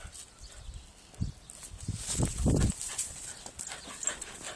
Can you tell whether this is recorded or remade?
recorded